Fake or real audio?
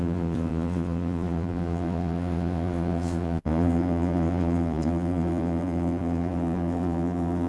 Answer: fake